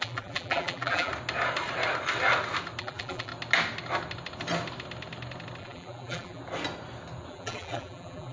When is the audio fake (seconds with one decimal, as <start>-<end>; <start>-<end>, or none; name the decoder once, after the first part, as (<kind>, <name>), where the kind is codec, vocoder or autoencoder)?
0.0-1.1 (vocoder, BigVGAN v2); 2.8-3.3; 5.6-6.4; 7.3-8.3